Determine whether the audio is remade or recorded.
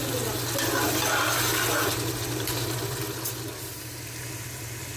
recorded